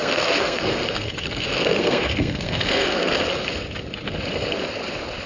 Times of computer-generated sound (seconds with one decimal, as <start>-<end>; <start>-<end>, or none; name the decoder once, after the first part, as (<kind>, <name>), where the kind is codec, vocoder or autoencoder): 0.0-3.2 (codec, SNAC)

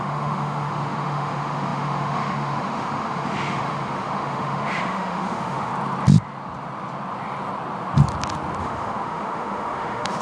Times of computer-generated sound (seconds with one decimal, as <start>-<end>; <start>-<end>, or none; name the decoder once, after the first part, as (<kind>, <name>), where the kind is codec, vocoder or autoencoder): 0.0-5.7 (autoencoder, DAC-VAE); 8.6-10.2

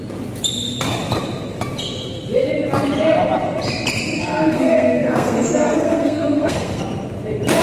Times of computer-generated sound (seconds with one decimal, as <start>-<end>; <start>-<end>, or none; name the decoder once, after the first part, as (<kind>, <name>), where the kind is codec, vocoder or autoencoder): 4.2-6.8 (codec, SNAC)

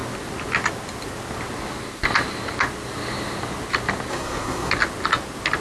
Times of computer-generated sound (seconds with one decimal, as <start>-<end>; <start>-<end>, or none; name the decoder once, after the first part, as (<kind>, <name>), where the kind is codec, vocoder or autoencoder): 4.1-4.7 (codec, SNAC)

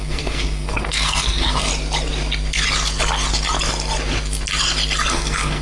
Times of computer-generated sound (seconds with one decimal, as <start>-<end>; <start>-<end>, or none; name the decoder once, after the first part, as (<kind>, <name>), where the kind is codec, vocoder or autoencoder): 0.0-1.7 (codec, SNAC); 5.1-5.6